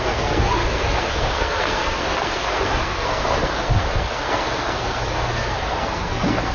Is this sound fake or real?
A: fake